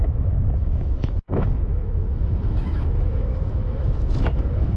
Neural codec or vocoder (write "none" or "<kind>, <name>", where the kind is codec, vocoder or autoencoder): autoencoder, DAC-VAE